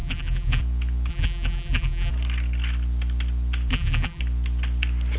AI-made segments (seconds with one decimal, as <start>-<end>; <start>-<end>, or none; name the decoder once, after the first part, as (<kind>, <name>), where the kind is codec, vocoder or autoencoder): 0.0-0.6 (vocoder, BigVGAN v2); 1.1-2.1; 3.7-4.2